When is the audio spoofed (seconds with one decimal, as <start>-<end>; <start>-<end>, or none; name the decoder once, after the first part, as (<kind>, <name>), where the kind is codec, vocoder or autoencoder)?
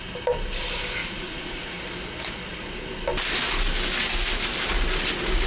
1.0-1.8 (vocoder, Vocos)